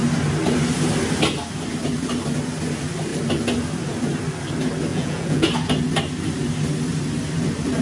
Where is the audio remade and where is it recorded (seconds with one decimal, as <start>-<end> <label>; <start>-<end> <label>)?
0.0-4.9 recorded; 4.9-5.5 remade; 5.5-7.8 recorded